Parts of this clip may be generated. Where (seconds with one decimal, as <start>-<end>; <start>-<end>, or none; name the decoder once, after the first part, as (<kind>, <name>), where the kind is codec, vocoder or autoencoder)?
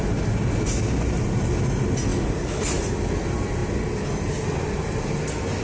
none